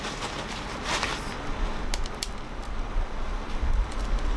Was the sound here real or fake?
real